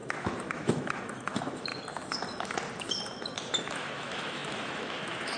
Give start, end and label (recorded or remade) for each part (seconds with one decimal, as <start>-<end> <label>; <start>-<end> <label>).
0.0-1.7 remade; 1.7-3.6 recorded; 3.6-5.4 remade